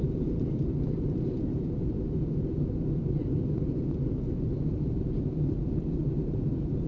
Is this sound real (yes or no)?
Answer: no